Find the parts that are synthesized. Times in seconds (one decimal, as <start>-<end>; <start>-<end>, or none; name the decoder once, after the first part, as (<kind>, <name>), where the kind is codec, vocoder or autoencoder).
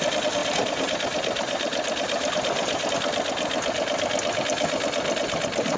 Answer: 0.4-2.9 (vocoder, BigVGAN v2)